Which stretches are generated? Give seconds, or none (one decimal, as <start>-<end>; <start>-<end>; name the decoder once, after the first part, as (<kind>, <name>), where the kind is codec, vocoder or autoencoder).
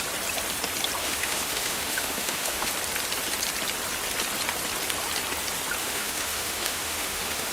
1.0-2.7 (autoencoder, DAC-VAE); 5.8-7.5